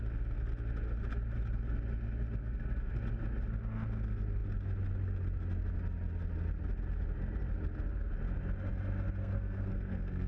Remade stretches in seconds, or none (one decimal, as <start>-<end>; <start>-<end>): 2.4-2.9; 9.2-10.3